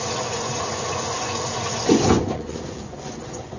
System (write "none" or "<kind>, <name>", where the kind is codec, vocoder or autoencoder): vocoder, Vocos